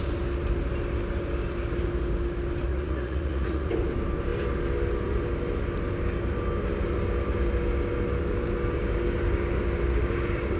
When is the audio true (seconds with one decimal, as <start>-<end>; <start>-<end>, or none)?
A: 0.0-2.7; 3.7-10.6